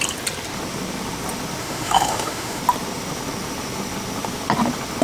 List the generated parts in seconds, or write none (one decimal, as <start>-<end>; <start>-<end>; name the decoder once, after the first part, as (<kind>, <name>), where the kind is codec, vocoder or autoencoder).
1.6-2.6 (autoencoder, DAC-VAE)